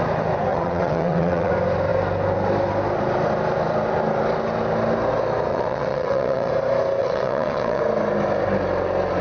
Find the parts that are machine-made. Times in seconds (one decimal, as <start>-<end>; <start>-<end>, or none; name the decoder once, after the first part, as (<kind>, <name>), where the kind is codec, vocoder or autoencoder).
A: 0.5-1.5 (vocoder, WaveNeXt); 5.5-6.5; 7.0-7.8